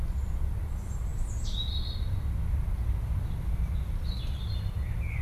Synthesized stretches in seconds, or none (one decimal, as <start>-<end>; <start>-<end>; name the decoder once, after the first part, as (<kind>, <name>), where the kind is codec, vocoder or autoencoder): none